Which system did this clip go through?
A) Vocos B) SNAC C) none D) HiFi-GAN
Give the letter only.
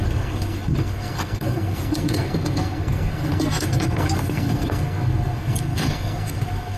B